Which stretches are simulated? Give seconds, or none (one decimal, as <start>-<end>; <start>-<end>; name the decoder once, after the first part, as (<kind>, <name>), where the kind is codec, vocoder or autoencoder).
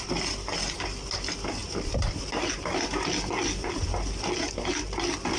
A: none